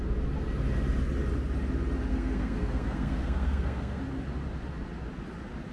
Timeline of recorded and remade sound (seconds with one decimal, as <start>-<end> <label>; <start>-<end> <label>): 0.0-2.1 recorded; 2.1-4.0 remade; 4.0-5.7 recorded